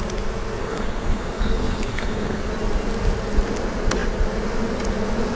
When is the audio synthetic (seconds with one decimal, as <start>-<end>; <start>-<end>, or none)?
0.6-2.5